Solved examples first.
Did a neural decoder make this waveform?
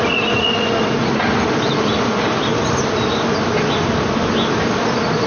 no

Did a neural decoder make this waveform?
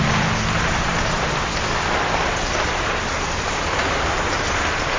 no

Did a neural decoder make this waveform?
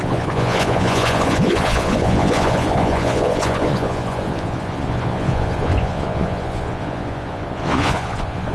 yes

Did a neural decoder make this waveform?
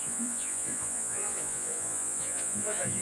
yes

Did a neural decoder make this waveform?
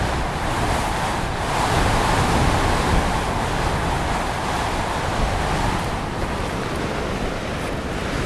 no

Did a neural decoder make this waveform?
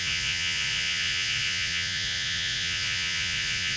yes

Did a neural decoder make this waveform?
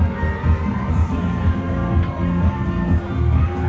no